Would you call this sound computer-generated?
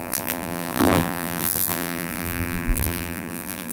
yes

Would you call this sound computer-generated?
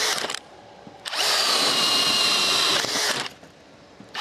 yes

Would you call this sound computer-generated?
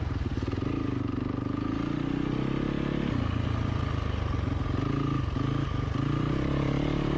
no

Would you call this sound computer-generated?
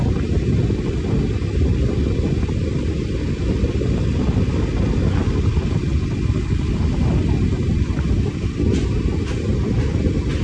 no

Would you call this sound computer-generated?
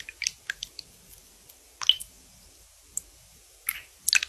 no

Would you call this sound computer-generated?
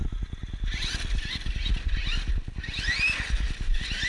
no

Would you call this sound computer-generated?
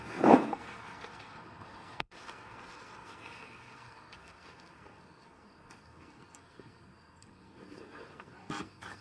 yes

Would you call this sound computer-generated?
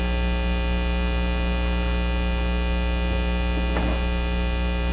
no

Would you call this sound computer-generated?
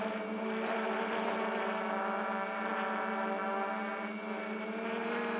no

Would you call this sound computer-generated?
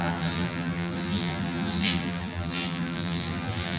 yes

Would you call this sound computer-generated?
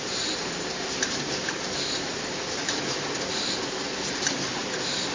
no